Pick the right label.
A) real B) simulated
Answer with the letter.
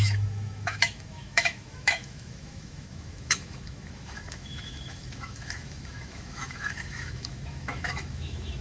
B